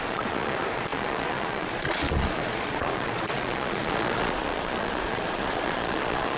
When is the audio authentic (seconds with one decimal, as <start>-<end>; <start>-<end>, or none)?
none